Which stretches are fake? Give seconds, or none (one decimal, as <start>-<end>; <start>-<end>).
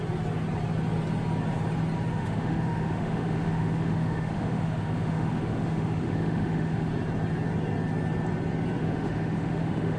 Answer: 2.1-6.9; 8.8-10.0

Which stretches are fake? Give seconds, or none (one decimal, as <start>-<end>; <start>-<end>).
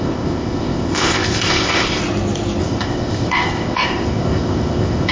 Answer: 0.0-2.0; 2.6-5.1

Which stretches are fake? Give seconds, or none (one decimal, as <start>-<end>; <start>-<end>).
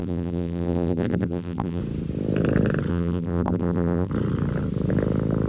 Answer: 0.0-1.8; 2.9-4.1